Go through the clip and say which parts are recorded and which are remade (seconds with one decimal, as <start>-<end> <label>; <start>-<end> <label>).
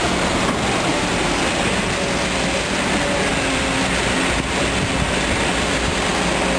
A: 0.0-0.9 recorded; 0.9-1.4 remade; 1.4-3.3 recorded; 3.3-6.1 remade; 6.1-6.6 recorded